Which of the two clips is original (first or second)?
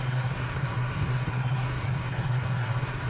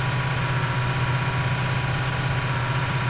second